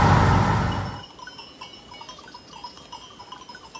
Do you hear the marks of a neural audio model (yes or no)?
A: no